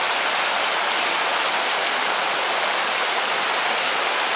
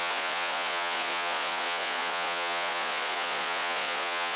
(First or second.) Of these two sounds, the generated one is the second